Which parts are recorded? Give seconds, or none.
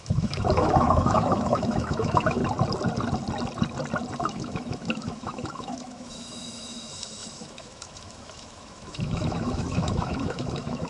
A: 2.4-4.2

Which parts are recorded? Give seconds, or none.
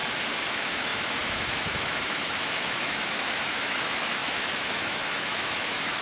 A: 0.0-0.5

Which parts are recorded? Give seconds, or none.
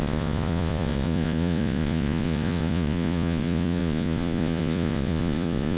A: none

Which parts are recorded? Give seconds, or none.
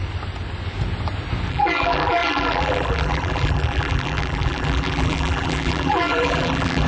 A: 0.0-1.5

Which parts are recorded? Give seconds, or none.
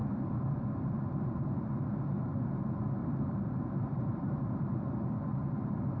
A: 0.0-3.0; 5.0-6.0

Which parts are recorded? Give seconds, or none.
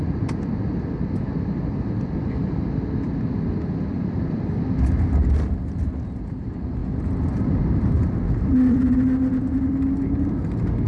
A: 0.0-10.9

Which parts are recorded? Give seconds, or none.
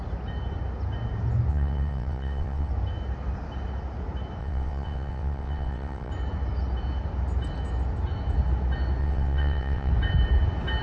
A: 0.0-1.5; 2.7-4.4; 6.1-9.0; 9.9-10.8